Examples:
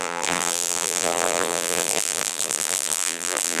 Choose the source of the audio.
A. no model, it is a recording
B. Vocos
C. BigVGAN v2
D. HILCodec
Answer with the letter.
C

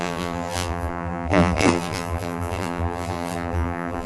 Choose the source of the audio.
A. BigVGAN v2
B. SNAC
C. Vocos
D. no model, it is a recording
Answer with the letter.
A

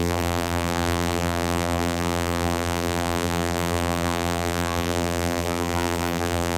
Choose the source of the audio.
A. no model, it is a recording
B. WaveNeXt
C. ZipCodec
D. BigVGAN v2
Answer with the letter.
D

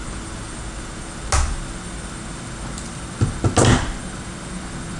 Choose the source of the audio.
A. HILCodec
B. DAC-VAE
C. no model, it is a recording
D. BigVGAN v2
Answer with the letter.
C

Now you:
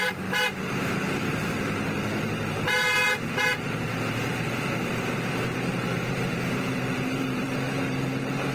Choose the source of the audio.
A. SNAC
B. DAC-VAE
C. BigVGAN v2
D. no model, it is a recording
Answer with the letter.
C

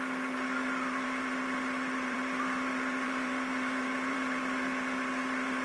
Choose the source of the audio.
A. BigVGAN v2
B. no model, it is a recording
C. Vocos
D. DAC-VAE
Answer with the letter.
A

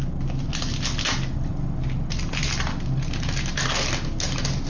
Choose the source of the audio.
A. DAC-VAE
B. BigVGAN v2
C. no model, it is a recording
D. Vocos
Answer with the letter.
C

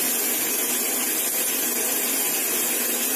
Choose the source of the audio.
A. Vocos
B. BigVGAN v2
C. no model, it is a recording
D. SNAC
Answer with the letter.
C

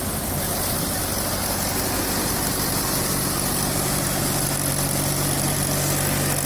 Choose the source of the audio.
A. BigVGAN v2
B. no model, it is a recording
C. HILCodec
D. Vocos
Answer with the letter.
B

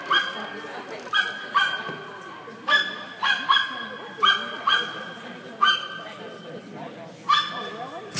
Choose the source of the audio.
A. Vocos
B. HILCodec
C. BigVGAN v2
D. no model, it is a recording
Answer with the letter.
D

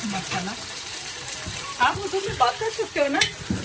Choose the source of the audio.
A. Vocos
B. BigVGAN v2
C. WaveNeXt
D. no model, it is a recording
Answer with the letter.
B